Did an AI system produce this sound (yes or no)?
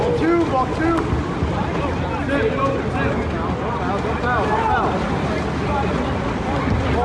no